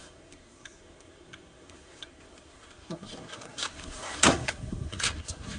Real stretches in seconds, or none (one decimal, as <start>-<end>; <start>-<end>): none